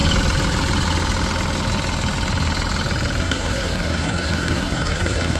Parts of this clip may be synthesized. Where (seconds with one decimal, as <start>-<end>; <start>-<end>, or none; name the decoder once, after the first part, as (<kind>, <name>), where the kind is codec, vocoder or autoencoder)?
3.2-5.4 (codec, SNAC)